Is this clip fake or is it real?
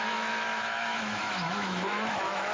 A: fake